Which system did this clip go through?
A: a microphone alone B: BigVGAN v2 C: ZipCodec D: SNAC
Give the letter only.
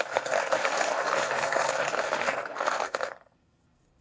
D